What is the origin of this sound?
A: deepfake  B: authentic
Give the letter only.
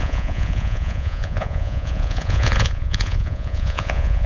A